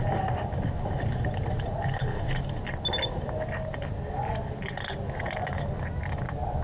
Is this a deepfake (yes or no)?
no